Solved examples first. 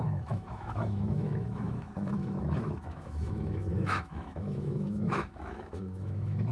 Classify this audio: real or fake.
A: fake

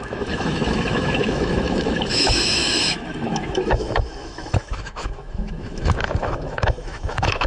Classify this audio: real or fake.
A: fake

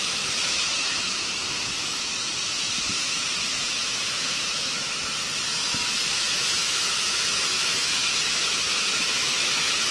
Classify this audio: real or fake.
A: fake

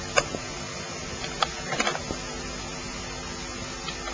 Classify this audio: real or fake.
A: real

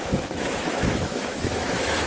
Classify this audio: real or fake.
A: fake